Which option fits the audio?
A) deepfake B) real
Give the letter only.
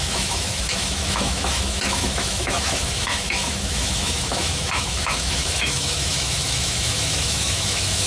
A